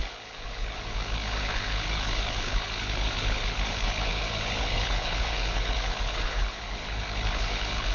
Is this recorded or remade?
remade